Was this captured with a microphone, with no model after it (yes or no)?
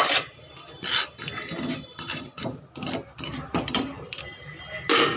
yes